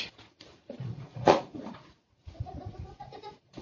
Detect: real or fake fake